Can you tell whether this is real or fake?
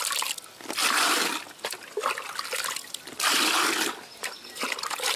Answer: real